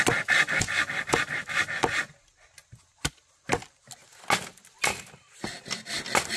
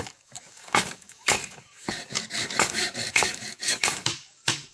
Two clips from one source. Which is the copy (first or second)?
second